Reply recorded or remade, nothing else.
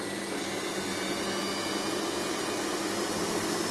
recorded